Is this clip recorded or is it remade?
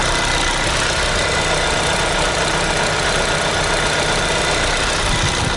recorded